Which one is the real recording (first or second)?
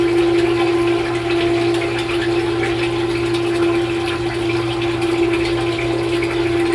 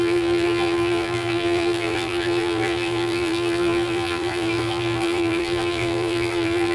first